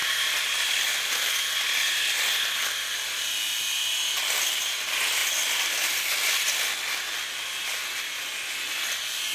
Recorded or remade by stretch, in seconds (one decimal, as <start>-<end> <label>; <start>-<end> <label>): 0.0-9.3 recorded